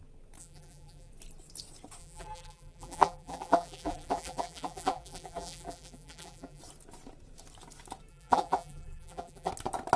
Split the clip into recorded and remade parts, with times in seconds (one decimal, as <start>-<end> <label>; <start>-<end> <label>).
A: 0.0-0.4 recorded; 0.4-1.1 remade; 1.1-2.0 recorded; 2.0-6.6 remade; 6.6-8.1 recorded; 8.1-9.5 remade; 9.5-10.0 recorded

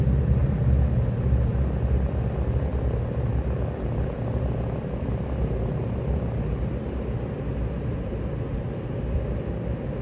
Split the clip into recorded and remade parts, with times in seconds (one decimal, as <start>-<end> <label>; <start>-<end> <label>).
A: 0.0-10.0 recorded